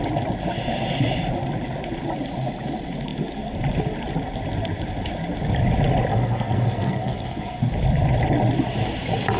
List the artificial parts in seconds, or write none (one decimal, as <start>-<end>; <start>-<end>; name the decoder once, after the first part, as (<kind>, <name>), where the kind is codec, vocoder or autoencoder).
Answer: 6.1-7.6 (codec, SNAC)

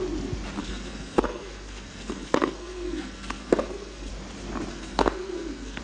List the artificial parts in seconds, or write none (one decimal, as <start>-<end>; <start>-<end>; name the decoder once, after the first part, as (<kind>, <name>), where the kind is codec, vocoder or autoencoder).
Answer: 0.6-4.1 (codec, SNAC); 4.7-5.8

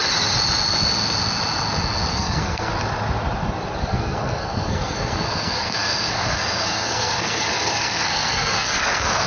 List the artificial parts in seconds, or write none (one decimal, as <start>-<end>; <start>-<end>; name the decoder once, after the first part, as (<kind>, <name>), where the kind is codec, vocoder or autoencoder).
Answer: 2.1-2.7 (codec, SNAC); 3.9-9.3